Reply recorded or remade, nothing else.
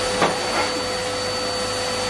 recorded